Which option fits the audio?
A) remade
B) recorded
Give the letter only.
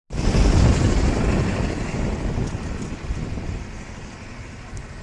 B